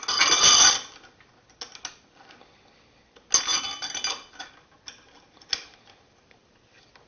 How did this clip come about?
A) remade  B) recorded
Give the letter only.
B